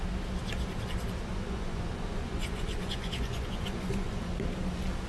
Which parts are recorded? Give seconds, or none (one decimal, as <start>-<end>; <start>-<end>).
0.0-1.3; 4.3-5.1